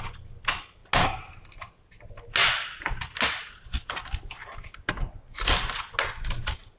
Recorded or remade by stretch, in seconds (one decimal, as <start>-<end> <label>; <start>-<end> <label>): 0.0-6.8 recorded